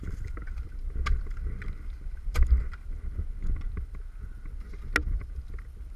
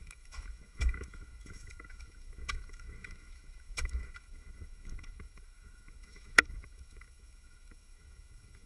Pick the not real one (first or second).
second